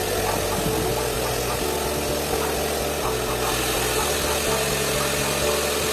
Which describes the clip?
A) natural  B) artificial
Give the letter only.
A